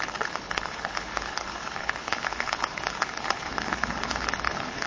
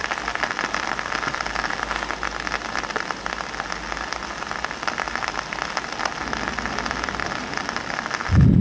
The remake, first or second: first